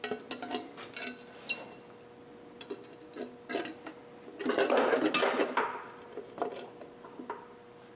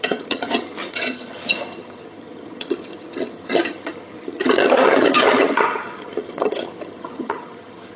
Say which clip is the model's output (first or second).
second